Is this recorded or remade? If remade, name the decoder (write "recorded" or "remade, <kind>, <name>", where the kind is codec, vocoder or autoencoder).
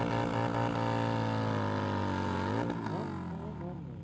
recorded